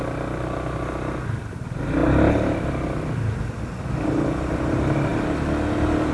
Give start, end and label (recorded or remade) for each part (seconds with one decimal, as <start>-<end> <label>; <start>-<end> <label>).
0.0-6.1 recorded